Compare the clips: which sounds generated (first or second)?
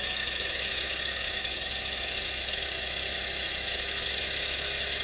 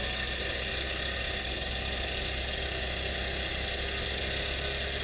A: first